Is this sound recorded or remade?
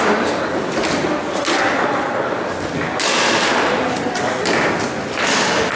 recorded